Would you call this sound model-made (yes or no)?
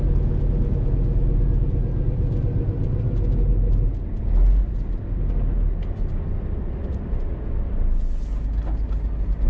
no